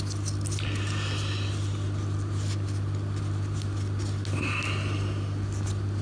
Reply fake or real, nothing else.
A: real